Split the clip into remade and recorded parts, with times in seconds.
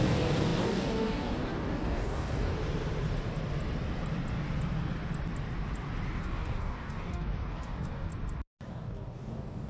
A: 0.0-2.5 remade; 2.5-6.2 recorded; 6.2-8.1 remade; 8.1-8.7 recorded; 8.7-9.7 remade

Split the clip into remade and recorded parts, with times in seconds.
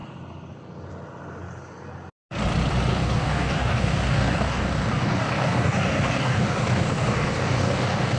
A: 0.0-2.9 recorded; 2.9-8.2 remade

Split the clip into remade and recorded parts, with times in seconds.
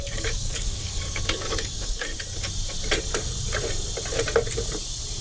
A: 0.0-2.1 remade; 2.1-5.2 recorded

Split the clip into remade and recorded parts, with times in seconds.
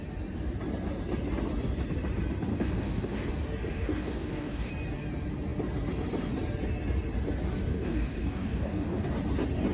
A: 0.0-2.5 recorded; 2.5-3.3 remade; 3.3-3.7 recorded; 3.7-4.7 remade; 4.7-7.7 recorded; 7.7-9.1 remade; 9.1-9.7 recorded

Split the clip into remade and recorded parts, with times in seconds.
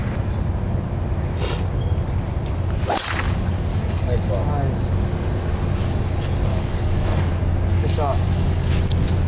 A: 0.0-3.7 recorded; 3.7-4.3 remade; 4.3-6.5 recorded; 6.5-7.3 remade; 7.3-7.7 recorded; 7.7-8.7 remade; 8.7-9.3 recorded